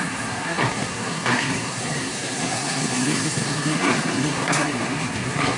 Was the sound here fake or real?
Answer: fake